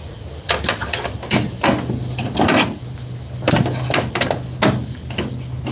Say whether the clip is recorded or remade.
recorded